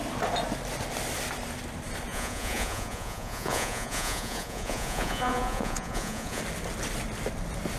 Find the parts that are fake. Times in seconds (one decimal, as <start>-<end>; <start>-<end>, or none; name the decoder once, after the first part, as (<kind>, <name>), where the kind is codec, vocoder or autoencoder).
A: 2.1-6.4 (vocoder, Vocos)